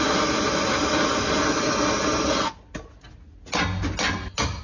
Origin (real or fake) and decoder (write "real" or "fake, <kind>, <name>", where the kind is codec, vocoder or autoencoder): real